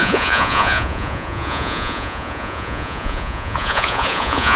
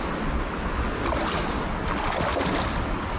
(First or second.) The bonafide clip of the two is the second